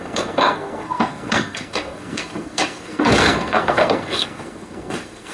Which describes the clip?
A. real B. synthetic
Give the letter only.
B